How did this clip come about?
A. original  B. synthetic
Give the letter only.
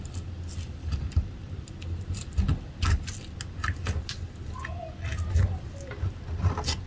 A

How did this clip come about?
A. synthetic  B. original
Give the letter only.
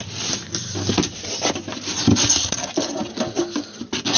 B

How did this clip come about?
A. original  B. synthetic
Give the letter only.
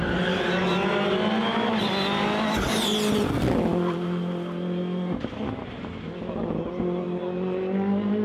A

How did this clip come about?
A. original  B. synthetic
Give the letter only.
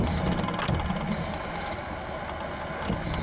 A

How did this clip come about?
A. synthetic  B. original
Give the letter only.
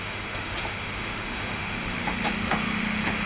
A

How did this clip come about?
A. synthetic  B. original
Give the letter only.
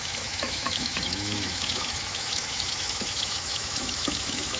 A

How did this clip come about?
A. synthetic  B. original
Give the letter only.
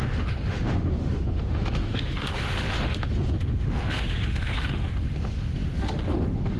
A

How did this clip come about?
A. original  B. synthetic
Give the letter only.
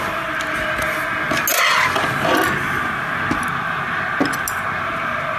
A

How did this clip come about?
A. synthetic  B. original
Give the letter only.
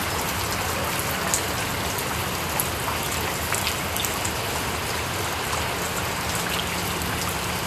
B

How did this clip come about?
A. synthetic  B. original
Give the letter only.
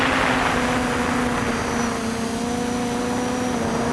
B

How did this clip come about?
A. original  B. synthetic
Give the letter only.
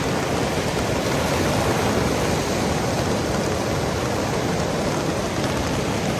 A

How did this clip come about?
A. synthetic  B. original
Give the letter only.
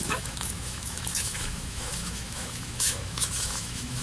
A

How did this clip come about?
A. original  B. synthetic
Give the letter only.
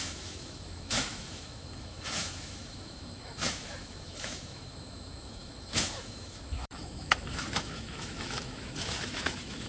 B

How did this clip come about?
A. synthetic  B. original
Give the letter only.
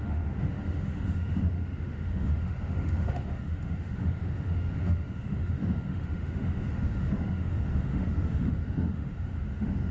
A